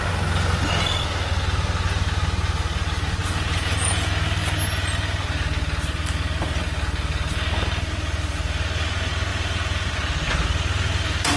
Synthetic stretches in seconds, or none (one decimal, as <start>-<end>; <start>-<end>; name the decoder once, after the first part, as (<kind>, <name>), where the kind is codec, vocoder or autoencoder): 3.2-4.1 (vocoder, Vocos); 9.3-9.9